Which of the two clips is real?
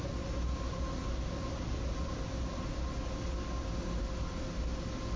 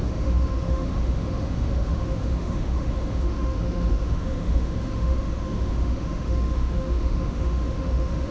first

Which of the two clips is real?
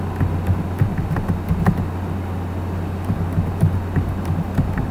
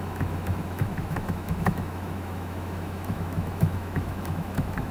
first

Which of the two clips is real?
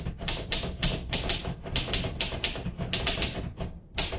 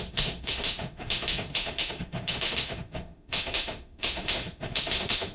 first